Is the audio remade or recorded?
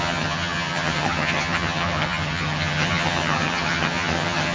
remade